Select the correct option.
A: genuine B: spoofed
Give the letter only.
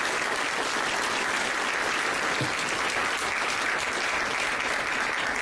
A